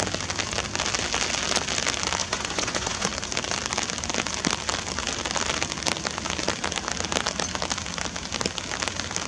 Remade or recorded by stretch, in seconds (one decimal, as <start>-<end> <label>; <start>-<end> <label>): 0.0-2.2 recorded; 2.2-3.1 remade; 3.1-9.3 recorded